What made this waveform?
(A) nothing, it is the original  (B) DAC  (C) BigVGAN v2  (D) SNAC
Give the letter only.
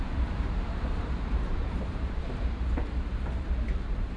C